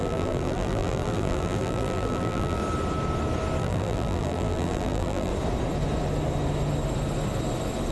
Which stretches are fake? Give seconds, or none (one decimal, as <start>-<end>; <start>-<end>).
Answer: 0.0-2.6; 3.6-5.3